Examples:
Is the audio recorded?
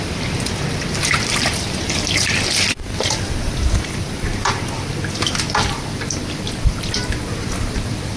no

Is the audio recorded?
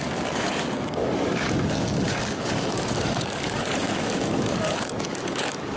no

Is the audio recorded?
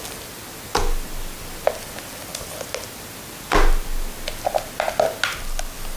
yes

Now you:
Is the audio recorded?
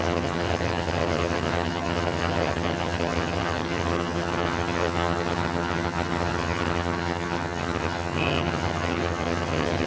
no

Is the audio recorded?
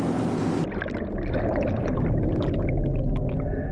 yes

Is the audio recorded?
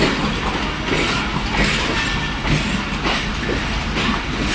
yes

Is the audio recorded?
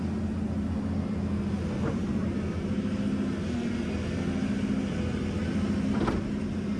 yes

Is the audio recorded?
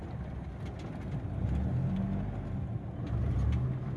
yes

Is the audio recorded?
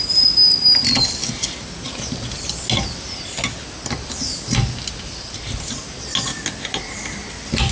yes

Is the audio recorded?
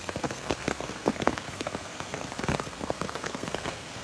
no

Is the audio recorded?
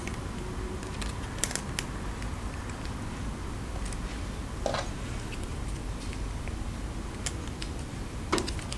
yes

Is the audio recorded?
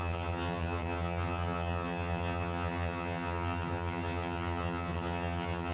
no